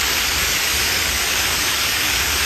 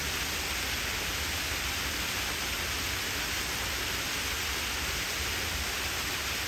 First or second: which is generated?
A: first